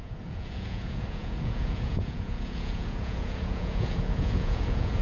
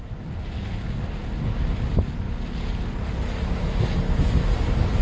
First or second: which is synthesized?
first